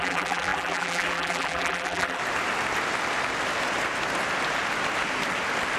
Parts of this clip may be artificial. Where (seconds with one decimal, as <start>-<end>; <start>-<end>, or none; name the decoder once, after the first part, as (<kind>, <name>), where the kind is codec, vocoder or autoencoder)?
0.0-2.2 (vocoder, BigVGAN v2)